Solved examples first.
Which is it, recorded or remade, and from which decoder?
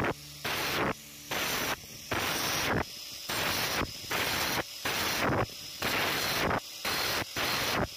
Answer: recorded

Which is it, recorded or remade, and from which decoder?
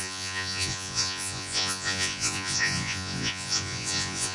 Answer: remade, vocoder, Vocos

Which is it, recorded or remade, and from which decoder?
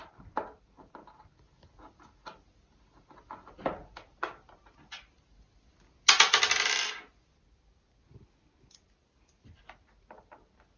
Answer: recorded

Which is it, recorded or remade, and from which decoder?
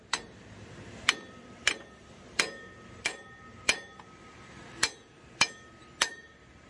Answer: remade, vocoder, BigVGAN v2